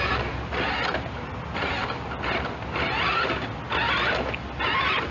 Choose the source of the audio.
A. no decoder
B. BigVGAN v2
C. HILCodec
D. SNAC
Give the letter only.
A